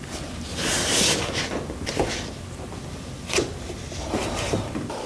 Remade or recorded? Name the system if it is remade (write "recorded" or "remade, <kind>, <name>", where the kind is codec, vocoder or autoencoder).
recorded